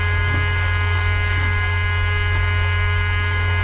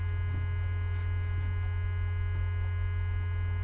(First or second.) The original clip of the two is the second